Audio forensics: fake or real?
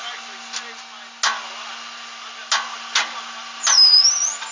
real